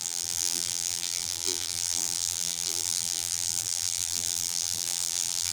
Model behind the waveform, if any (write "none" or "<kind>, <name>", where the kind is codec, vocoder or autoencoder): vocoder, BigVGAN v2